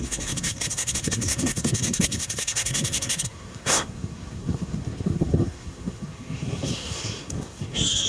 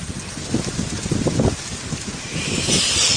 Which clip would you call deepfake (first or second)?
first